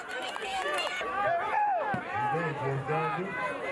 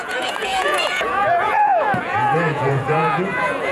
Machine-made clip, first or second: second